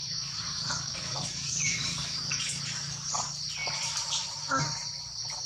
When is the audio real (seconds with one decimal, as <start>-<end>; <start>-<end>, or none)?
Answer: 2.6-5.5